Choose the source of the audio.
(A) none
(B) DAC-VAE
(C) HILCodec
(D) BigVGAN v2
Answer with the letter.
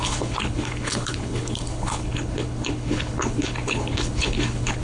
C